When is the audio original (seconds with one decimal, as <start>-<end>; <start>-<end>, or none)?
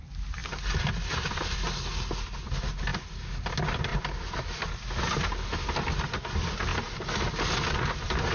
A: 0.0-8.3